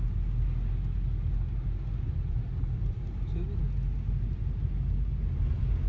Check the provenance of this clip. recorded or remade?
recorded